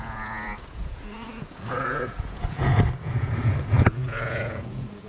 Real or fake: fake